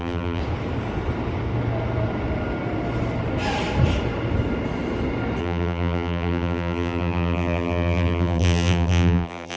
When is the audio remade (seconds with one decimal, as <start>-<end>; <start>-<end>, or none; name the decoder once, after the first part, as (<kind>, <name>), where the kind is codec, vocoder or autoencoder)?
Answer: 0.0-0.4 (vocoder, BigVGAN v2); 5.4-9.6